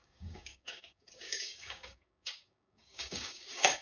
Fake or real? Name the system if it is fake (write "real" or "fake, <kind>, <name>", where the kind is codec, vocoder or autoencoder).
fake, codec, DAC